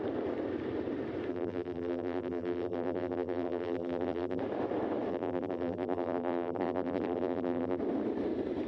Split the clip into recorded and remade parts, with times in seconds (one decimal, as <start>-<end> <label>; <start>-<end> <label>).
0.0-1.3 recorded; 1.3-4.4 remade; 4.4-5.1 recorded; 5.1-7.8 remade; 7.8-8.7 recorded